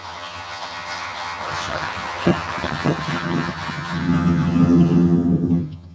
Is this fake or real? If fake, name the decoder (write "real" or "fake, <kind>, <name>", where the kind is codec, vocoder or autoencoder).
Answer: fake, vocoder, HiFi-GAN